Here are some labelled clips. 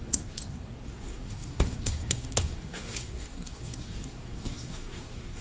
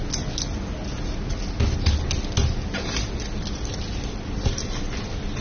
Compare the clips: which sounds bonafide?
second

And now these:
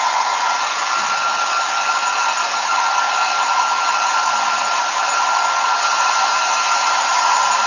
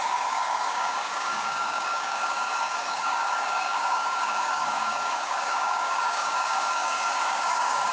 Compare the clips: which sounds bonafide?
first